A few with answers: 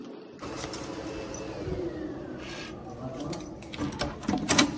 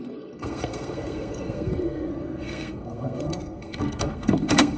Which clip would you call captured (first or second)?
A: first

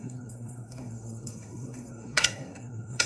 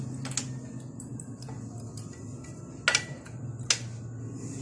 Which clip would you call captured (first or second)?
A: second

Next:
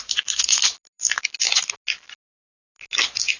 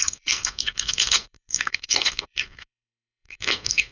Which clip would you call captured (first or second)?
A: first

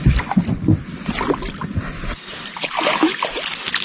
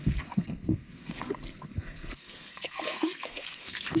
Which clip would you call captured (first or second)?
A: first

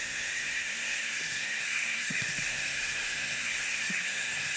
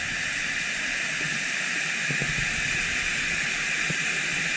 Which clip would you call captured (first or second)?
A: second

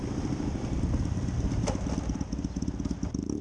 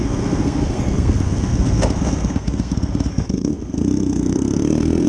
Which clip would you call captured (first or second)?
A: first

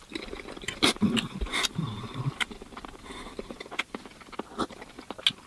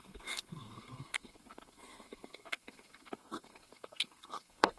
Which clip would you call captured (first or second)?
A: first